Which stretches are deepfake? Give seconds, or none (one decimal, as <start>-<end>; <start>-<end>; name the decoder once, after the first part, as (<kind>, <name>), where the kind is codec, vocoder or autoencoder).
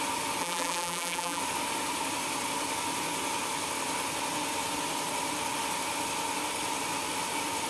0.4-1.4 (vocoder, BigVGAN v2)